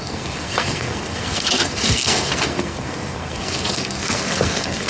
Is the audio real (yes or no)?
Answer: no